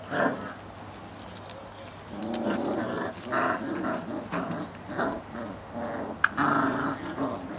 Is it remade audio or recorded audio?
recorded